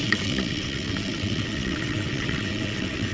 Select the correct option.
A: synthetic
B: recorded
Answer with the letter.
A